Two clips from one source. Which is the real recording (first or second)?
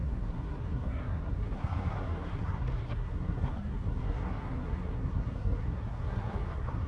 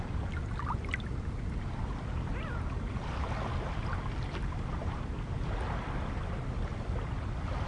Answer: second